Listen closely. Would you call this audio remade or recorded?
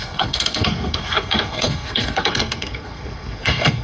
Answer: remade